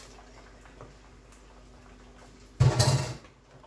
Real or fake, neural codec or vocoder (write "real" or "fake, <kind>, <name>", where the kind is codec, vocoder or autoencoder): real